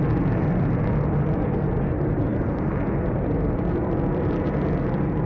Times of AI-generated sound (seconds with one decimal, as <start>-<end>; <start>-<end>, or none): none